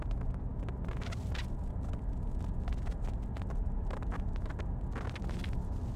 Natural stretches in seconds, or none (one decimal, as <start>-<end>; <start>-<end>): 0.0-6.0